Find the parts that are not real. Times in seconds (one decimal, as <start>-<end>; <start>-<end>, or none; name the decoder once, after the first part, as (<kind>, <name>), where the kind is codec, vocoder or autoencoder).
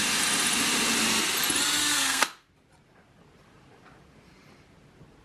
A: 1.8-2.5 (codec, SNAC)